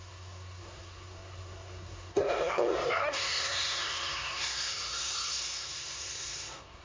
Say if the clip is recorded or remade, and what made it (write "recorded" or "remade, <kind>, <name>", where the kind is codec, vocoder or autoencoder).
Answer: remade, codec, SNAC